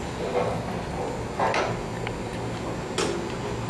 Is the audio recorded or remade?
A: recorded